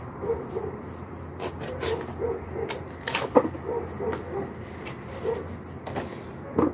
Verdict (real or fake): real